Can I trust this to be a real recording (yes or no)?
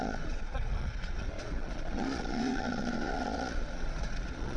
no